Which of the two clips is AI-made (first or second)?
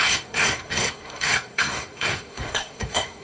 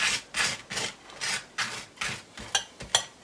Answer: first